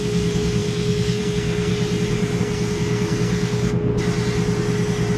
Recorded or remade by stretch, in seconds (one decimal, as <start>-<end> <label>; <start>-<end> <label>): 0.0-1.7 remade; 1.7-2.4 recorded; 2.4-3.9 remade; 3.9-5.2 recorded